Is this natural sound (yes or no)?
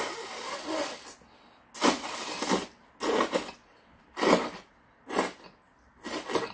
yes